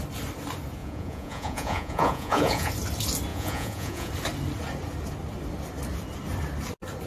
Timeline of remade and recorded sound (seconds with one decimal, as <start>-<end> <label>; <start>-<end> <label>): 0.0-0.8 recorded; 0.8-2.7 remade; 2.7-3.3 recorded; 3.3-4.1 remade; 4.1-7.1 recorded